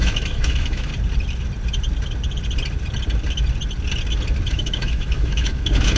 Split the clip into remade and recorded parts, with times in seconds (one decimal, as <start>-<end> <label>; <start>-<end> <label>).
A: 0.0-0.9 remade; 0.9-4.5 recorded; 4.5-6.0 remade